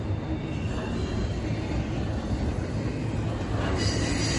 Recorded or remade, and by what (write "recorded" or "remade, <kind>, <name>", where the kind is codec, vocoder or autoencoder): recorded